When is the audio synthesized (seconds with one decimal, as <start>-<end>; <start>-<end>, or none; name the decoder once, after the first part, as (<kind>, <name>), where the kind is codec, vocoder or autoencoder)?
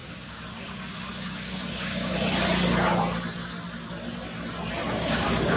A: 0.0-2.1 (codec, DAC); 4.9-5.6